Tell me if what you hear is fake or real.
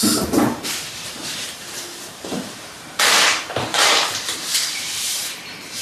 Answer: fake